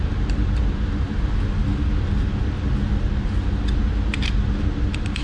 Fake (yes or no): no